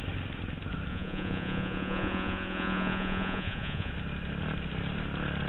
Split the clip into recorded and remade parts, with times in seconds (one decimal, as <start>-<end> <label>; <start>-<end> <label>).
0.0-0.9 recorded; 0.9-3.9 remade; 3.9-5.5 recorded